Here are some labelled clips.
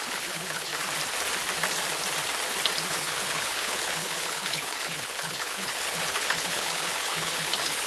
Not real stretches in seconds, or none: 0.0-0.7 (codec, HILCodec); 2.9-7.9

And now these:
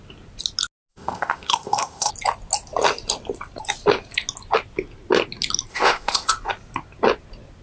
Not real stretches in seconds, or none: 0.9-2.1 (codec, ZipCodec); 5.7-6.3

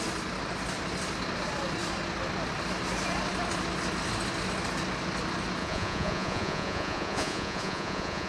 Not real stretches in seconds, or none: 5.6-8.3 (vocoder, Vocos)